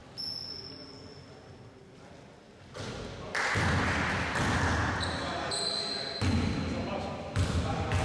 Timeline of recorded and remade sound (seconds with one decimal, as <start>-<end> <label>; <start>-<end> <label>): 0.0-3.8 recorded; 3.8-4.7 remade; 4.7-7.3 recorded; 7.3-8.0 remade